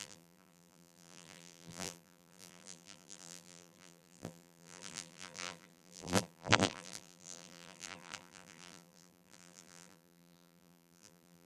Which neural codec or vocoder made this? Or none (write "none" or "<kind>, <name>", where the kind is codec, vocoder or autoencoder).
vocoder, BigVGAN v2